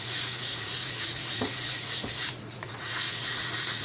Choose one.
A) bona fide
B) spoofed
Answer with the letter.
B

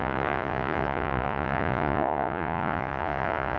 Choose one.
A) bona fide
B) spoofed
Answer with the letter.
B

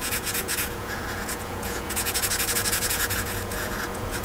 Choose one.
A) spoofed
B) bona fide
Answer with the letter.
A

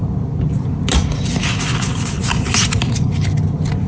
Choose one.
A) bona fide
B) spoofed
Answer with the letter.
A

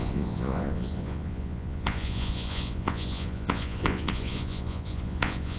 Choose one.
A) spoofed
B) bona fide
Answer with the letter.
A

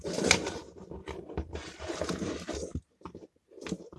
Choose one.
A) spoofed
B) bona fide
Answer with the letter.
B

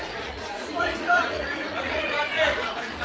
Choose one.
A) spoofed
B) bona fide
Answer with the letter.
A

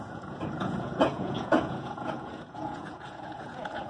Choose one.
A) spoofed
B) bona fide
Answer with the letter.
A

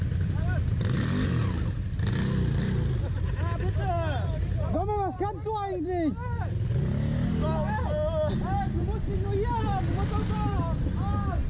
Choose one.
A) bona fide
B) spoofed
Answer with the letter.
A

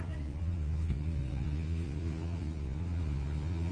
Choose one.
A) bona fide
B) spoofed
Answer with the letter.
B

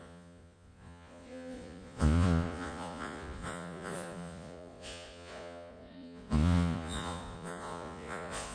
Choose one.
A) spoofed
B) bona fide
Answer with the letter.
A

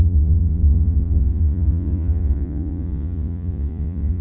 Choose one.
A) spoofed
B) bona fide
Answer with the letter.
A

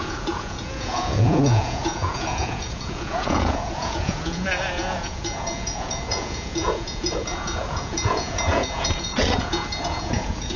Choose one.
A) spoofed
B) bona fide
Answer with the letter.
A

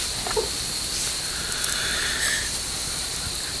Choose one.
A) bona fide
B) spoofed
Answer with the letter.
A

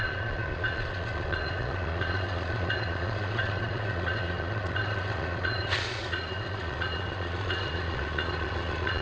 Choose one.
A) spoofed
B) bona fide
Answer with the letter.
A